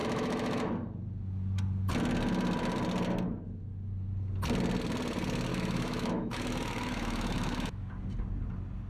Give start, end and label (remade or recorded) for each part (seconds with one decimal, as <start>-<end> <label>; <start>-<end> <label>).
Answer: 0.0-0.7 remade; 0.7-5.5 recorded; 5.5-7.9 remade; 7.9-8.9 recorded